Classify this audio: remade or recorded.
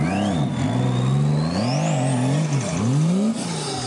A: recorded